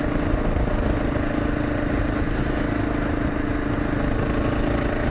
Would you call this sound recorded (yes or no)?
yes